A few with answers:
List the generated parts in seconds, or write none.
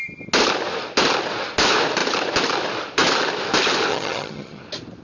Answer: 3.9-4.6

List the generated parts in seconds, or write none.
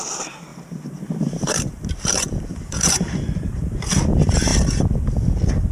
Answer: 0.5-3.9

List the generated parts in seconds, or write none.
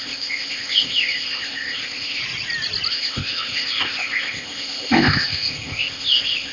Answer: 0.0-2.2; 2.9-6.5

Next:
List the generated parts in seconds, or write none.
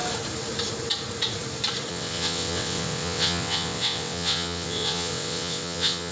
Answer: 1.9-6.1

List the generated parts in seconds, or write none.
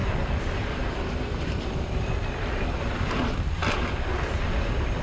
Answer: 0.0-5.0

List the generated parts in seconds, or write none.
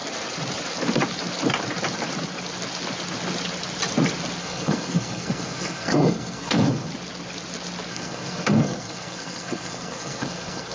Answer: 4.4-6.9; 7.9-10.7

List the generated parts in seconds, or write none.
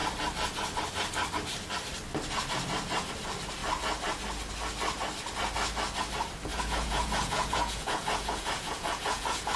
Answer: 6.5-9.6